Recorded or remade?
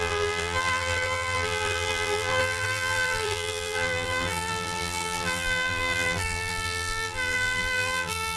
remade